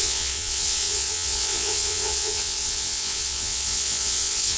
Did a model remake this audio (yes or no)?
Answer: yes